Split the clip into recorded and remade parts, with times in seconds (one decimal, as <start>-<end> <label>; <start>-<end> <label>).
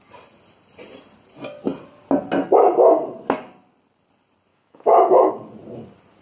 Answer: 0.0-4.5 recorded; 4.5-5.3 remade; 5.3-6.2 recorded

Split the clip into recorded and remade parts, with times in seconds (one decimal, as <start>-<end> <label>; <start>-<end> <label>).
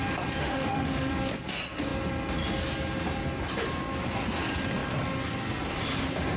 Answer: 0.0-0.4 recorded; 0.4-1.1 remade; 1.1-6.4 recorded